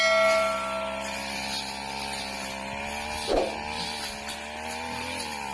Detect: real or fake real